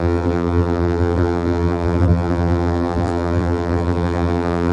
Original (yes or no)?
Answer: no